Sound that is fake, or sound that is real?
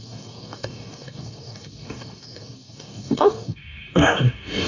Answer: fake